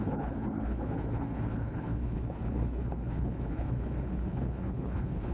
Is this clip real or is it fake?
fake